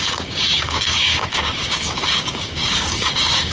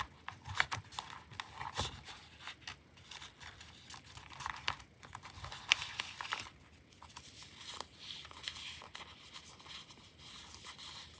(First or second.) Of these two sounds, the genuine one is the second